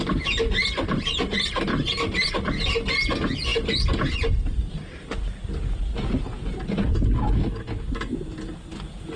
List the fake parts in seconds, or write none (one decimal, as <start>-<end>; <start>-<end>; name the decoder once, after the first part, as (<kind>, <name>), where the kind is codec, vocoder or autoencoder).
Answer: 5.9-6.7 (vocoder, BigVGAN v2)